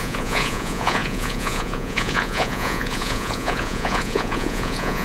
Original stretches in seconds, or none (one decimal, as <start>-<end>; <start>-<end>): none

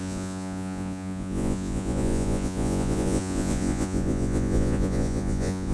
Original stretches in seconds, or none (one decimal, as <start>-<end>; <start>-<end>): none

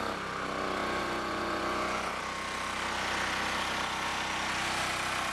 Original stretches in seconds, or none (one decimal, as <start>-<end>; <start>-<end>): 0.0-0.8; 2.2-5.3

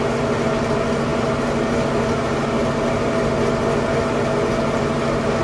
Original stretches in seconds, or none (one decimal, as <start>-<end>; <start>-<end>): 0.0-5.4

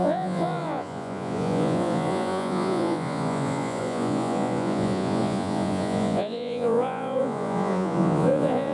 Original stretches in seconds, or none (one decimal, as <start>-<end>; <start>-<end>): none

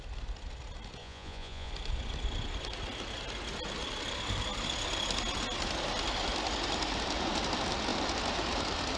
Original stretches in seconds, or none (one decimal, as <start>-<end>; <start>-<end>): 0.0-1.0; 1.7-9.0

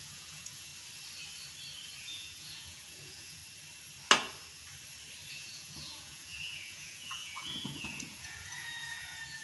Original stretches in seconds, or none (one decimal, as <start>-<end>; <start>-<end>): 0.7-2.0; 3.4-5.3

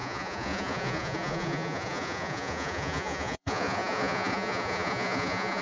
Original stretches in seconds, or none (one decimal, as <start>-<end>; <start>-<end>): none